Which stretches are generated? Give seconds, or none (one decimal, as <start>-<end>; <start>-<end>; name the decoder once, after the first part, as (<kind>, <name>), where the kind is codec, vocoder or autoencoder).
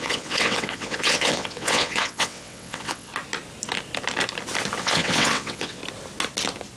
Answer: 0.0-3.1 (vocoder, WaveNeXt); 4.8-5.8